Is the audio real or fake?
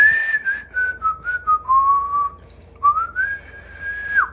real